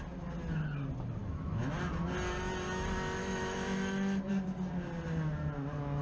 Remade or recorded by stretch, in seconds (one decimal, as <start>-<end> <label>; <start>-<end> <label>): 0.0-1.2 recorded; 1.2-1.7 remade; 1.7-3.2 recorded; 3.2-4.3 remade; 4.3-6.0 recorded